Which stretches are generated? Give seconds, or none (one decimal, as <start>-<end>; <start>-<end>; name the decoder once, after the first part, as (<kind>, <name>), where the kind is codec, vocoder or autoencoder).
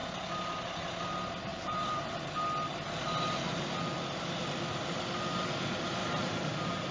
1.5-2.3 (vocoder, BigVGAN v2); 6.0-6.9